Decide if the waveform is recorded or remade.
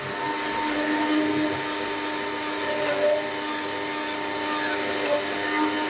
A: recorded